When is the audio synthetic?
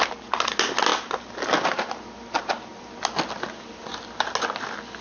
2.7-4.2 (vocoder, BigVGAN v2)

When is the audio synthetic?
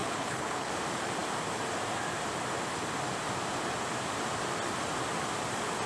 0.0-0.7 (codec, HILCodec)